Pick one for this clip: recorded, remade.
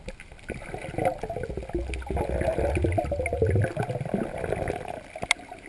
recorded